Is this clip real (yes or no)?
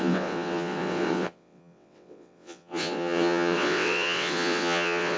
no